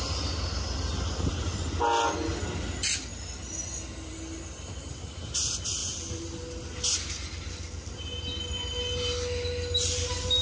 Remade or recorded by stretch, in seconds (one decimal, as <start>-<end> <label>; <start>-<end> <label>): 0.0-10.4 recorded